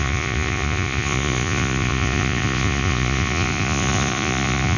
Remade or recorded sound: remade